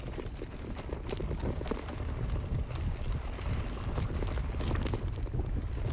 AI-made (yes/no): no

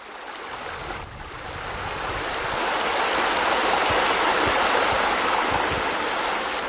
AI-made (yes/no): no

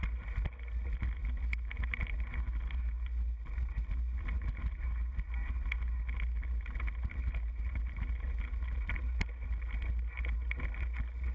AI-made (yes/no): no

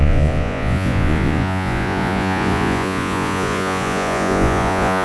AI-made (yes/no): yes